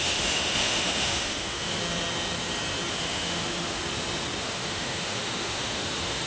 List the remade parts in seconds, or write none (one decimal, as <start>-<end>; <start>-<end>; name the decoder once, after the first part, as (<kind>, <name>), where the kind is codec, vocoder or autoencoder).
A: 0.0-1.8 (autoencoder, DAC-VAE); 2.9-3.8; 4.4-6.3